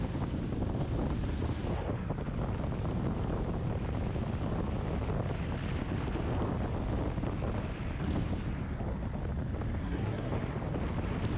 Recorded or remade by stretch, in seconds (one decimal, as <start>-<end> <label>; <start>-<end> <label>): 0.0-9.8 recorded; 9.8-10.3 remade; 10.3-11.4 recorded